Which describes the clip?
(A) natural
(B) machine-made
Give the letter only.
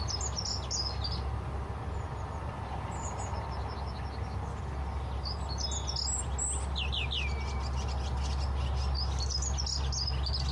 A